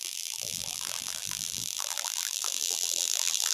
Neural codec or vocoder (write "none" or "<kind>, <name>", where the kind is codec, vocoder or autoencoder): vocoder, BigVGAN v2